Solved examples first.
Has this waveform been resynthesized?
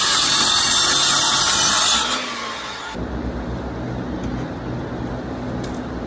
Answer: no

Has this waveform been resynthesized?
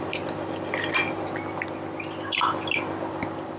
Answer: no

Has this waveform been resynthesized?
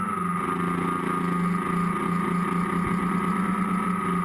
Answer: no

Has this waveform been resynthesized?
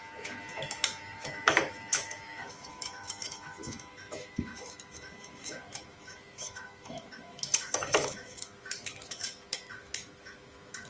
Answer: yes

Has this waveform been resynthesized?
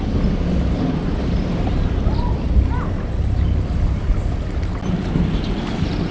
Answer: no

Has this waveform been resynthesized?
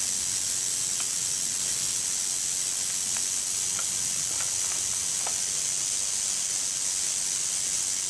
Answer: no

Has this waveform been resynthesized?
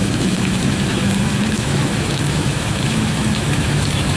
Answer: yes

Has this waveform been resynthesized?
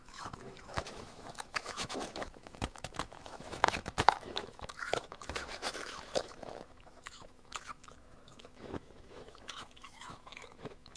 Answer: yes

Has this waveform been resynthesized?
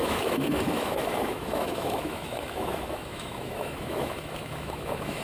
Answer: yes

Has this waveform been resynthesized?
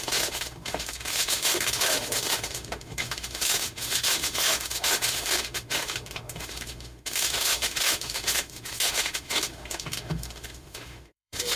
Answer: yes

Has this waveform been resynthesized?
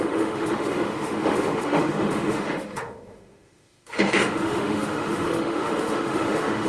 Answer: yes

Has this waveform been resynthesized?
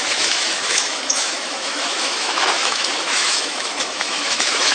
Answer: yes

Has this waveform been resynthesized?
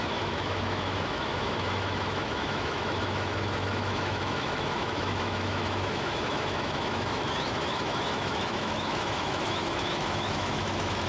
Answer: yes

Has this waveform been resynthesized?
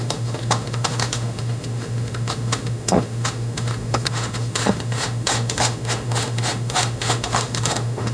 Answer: yes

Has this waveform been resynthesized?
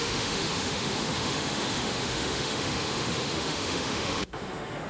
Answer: yes